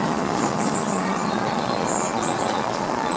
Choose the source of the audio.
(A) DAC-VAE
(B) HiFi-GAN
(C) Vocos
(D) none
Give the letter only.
C